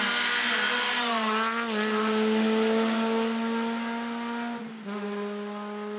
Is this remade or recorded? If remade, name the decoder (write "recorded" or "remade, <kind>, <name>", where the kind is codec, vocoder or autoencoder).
recorded